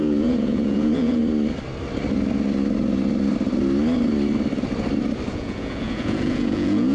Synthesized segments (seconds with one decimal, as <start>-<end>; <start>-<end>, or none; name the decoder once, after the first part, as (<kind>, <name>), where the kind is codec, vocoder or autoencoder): 0.0-1.2 (vocoder, Vocos); 5.3-6.9